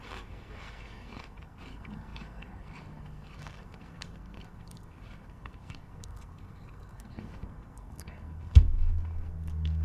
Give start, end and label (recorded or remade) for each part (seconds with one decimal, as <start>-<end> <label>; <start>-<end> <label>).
0.0-9.8 remade